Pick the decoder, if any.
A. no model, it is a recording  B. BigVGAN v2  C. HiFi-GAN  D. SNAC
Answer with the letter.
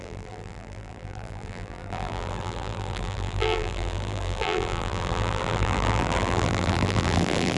B